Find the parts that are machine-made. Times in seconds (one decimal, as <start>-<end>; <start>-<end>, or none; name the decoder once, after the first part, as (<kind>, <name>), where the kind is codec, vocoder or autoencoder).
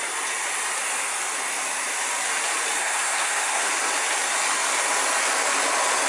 2.8-3.7 (codec, SNAC)